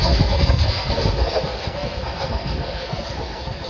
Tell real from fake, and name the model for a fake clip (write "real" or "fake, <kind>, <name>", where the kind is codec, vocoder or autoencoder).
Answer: fake, codec, SNAC